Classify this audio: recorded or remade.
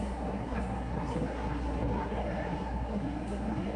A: remade